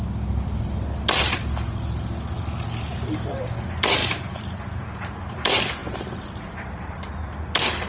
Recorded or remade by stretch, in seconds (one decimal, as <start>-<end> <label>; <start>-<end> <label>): 0.0-4.0 recorded; 4.0-5.1 remade; 5.1-5.8 recorded; 5.8-7.1 remade; 7.1-7.9 recorded